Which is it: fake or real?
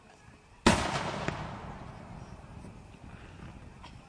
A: real